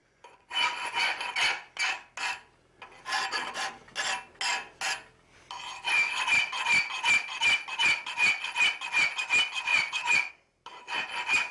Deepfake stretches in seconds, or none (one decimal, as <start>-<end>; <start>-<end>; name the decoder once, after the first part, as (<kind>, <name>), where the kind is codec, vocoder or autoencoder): 0.0-1.2 (vocoder, Vocos); 9.7-10.3